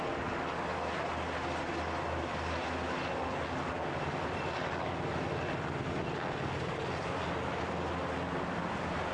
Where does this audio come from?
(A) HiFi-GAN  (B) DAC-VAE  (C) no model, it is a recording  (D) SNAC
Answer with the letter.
C